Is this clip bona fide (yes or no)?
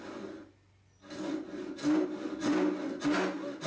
yes